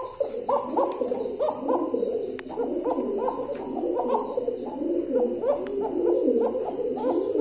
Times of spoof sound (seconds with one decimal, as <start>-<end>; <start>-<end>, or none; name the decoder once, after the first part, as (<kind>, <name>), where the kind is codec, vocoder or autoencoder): none

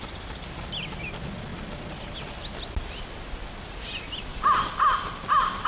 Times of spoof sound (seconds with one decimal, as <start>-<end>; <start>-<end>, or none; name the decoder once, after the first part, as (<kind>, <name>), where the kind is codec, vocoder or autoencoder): none

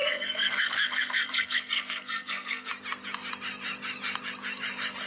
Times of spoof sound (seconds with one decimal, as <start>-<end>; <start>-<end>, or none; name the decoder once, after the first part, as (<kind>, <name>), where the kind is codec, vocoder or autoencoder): 0.0-2.7 (codec, SNAC)

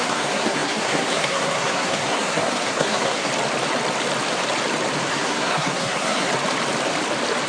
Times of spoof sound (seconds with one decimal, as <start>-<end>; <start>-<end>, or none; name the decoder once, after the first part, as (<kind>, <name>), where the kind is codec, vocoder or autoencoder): 0.0-3.3 (codec, SNAC); 5.1-6.3